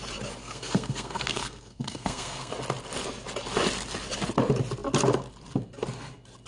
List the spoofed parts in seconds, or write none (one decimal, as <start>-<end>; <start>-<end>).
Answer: 0.4-2.5